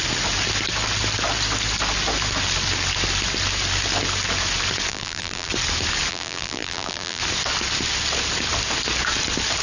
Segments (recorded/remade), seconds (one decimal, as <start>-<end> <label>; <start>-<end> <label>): 0.0-4.9 recorded; 4.9-5.5 remade; 5.5-6.1 recorded; 6.1-7.2 remade; 7.2-9.6 recorded

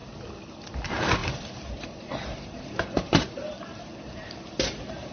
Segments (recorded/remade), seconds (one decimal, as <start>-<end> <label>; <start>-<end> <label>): 0.0-0.7 recorded; 0.7-5.1 remade

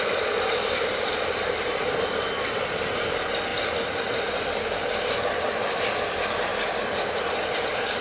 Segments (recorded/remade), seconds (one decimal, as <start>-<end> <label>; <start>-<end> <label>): 0.0-3.5 remade; 3.5-5.2 recorded; 5.2-6.5 remade; 6.5-7.2 recorded; 7.2-8.0 remade

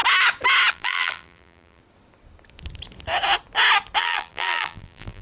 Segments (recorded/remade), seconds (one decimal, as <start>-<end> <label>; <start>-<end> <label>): 0.0-0.7 recorded; 0.7-1.8 remade; 1.8-4.0 recorded; 4.0-5.2 remade

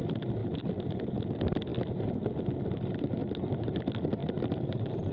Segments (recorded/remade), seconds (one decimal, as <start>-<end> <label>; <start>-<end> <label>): 0.0-0.4 recorded; 0.4-1.0 remade; 1.0-3.2 recorded; 3.2-3.8 remade; 3.8-4.2 recorded; 4.2-5.1 remade

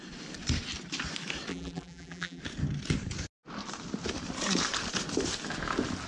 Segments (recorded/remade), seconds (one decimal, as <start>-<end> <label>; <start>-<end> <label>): 0.0-1.5 recorded; 1.5-2.4 remade; 2.4-6.1 recorded

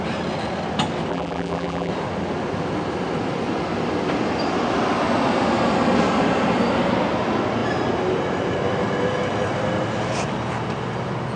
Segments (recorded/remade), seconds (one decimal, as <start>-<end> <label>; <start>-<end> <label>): 0.0-1.1 recorded; 1.1-1.9 remade; 1.9-11.4 recorded